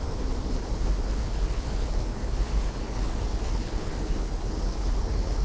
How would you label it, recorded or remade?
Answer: remade